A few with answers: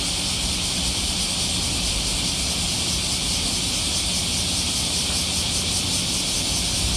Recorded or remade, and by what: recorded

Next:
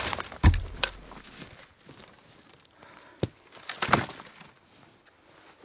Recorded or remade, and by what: recorded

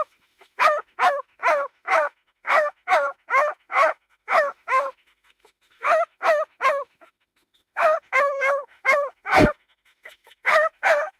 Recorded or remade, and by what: remade, autoencoder, DAC-VAE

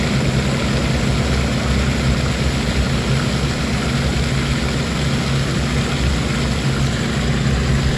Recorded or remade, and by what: recorded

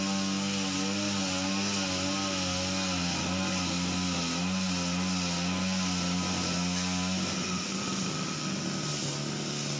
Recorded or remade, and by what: recorded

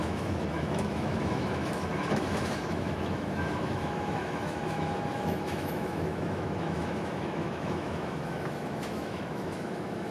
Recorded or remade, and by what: remade, autoencoder, DAC-VAE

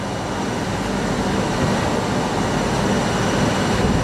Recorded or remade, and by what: recorded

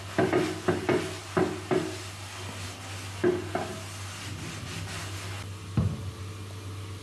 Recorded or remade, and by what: recorded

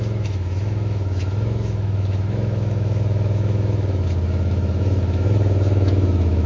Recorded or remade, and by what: remade, autoencoder, DAC-VAE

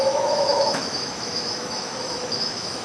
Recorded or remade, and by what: remade, autoencoder, DAC-VAE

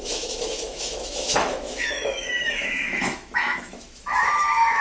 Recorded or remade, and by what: remade, autoencoder, DAC-VAE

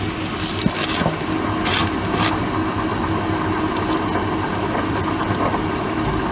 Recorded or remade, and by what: recorded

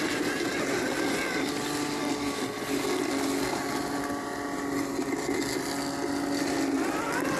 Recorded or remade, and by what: recorded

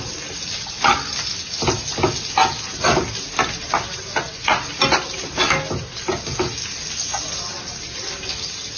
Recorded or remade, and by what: recorded